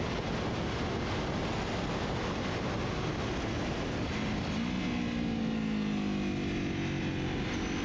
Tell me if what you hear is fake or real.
real